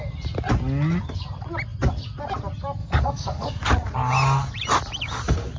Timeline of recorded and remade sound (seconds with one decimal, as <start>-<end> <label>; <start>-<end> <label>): 0.0-2.8 recorded; 2.8-3.7 remade; 3.7-5.6 recorded